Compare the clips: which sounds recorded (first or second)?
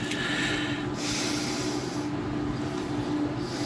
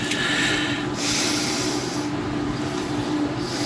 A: first